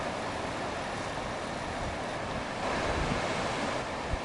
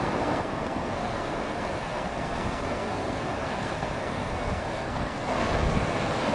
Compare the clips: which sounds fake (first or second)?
second